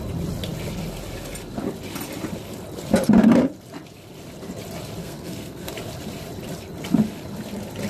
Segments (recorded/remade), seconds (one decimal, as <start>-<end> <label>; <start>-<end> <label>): 0.0-5.0 recorded; 5.0-5.7 remade; 5.7-7.9 recorded